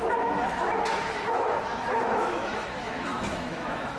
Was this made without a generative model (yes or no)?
no